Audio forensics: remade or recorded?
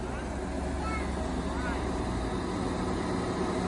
recorded